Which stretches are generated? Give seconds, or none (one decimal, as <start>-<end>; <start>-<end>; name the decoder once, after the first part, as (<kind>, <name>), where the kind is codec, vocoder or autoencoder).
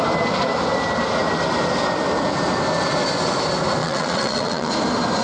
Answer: 3.8-4.7 (vocoder, WaveNeXt)